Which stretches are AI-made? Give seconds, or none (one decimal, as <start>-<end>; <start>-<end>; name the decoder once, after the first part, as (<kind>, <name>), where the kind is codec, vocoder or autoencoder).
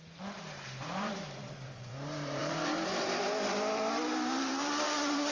0.0-5.3 (vocoder, BigVGAN v2)